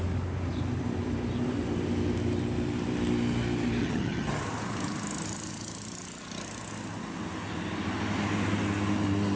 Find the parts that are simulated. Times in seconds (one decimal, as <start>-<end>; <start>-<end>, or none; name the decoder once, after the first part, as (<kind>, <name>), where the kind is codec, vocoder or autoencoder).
3.8-4.4 (vocoder, HiFi-GAN)